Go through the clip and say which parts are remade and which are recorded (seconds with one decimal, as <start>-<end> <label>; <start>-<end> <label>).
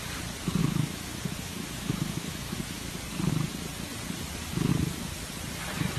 0.0-0.6 recorded; 0.6-3.0 remade; 3.0-6.0 recorded